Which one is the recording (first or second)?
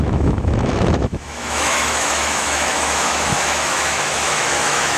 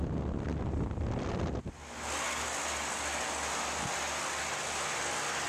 second